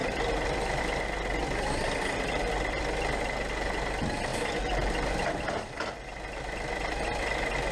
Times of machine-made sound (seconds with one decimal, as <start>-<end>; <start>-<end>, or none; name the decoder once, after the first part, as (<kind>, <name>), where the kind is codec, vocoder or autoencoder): 0.0-0.8 (vocoder, BigVGAN v2); 1.4-2.8; 4.3-5.4